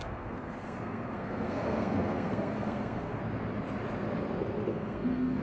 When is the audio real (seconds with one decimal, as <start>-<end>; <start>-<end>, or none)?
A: 3.2-4.7